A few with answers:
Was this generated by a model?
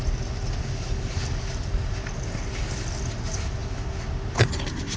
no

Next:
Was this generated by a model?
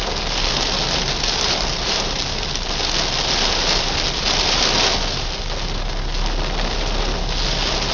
no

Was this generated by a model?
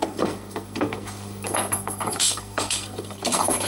yes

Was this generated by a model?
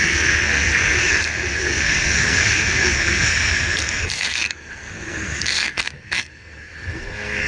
yes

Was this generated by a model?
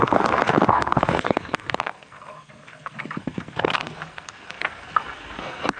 yes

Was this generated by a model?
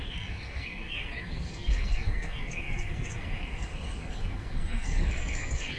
yes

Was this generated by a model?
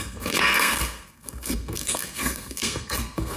yes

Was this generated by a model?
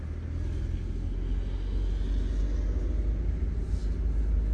no